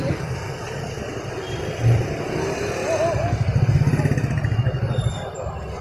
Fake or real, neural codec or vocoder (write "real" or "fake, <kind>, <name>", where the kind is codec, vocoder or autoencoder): real